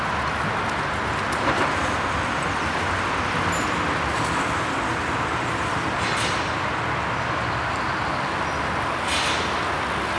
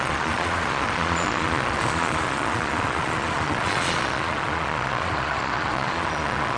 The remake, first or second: second